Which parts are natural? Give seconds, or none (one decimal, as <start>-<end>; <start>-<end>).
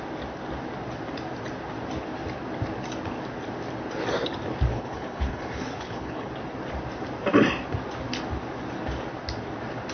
0.0-4.7; 6.3-9.9